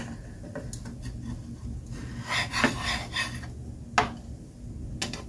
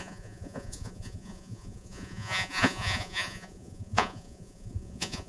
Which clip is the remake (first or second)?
second